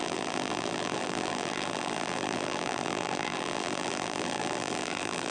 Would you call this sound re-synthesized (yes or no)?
yes